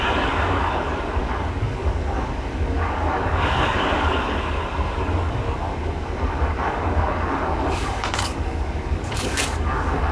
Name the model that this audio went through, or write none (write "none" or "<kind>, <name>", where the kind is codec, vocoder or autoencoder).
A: codec, DAC